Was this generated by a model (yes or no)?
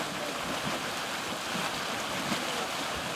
no